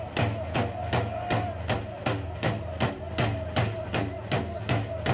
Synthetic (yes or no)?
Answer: no